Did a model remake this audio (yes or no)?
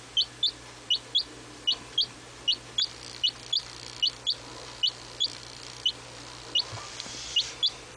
no